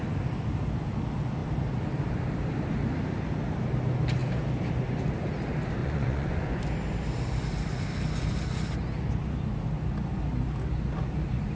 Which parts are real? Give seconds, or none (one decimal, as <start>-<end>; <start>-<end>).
0.0-5.8; 6.6-11.6